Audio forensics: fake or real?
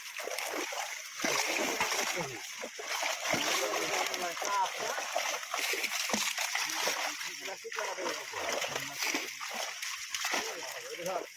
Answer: real